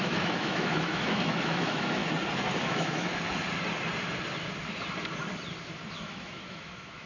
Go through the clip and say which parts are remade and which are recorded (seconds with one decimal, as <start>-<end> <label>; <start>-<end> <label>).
0.0-2.0 remade; 2.0-2.6 recorded; 2.6-3.1 remade; 3.1-5.9 recorded; 5.9-7.1 remade